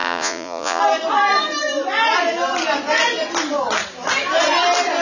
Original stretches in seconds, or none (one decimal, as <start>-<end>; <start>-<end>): 0.8-5.0